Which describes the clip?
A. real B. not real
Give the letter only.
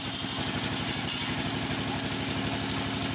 A